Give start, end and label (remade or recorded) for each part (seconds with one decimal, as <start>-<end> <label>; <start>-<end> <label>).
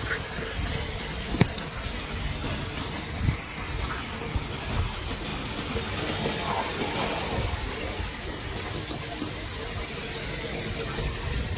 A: 0.0-11.6 recorded